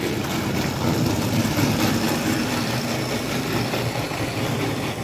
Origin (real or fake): real